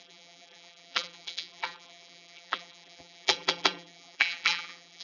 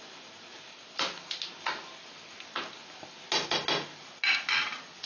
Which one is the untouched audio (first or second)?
second